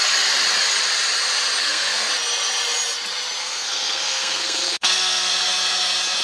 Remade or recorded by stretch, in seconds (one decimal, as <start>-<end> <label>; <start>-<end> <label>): 0.0-1.6 recorded; 1.6-2.1 remade; 2.1-3.4 recorded; 3.4-5.3 remade; 5.3-6.2 recorded